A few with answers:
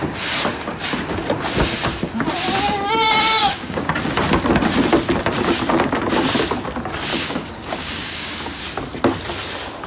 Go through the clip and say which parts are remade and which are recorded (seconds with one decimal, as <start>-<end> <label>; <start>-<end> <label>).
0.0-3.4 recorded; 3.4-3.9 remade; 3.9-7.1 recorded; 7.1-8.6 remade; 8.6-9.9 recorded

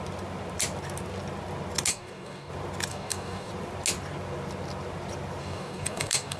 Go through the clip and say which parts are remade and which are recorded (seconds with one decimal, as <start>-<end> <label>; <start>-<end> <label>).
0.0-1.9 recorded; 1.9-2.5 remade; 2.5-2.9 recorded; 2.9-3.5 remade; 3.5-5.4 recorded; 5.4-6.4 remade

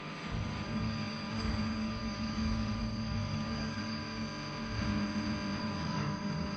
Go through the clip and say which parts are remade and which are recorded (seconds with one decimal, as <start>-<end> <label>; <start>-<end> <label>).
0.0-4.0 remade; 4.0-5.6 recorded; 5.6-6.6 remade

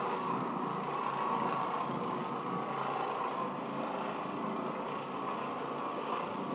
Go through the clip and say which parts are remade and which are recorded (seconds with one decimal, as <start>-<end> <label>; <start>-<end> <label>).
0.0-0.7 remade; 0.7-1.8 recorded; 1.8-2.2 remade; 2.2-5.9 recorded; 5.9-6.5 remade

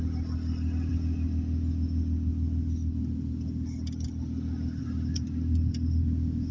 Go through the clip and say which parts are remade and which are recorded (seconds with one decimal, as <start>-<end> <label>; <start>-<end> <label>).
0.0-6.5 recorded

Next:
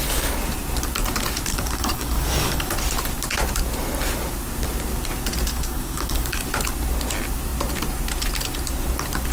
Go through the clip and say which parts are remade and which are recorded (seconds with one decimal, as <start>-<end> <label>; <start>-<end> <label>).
0.0-1.5 recorded; 1.5-2.7 remade; 2.7-5.5 recorded; 5.5-6.4 remade; 6.4-9.3 recorded

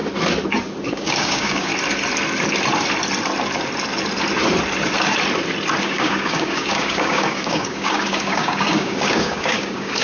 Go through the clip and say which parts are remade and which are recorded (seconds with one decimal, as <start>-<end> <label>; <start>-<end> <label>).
0.0-0.9 recorded; 0.9-1.7 remade; 1.7-5.8 recorded; 5.8-10.0 remade

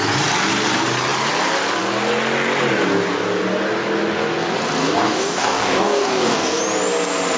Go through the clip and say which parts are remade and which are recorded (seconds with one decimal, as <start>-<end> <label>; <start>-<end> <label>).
0.0-4.8 recorded; 4.8-6.6 remade; 6.6-7.4 recorded